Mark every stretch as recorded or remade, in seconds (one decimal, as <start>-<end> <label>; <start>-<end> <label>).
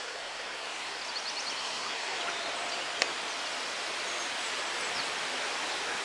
0.0-1.0 remade; 1.0-1.6 recorded; 1.6-2.2 remade; 2.2-6.0 recorded